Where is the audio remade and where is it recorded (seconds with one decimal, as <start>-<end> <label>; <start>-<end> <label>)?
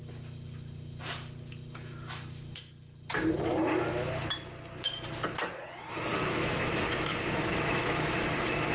0.0-6.1 recorded; 6.1-8.7 remade